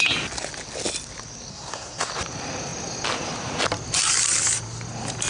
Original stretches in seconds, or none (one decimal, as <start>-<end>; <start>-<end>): 0.0-1.5; 2.1-5.3